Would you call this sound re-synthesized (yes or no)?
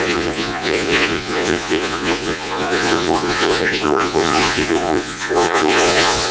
yes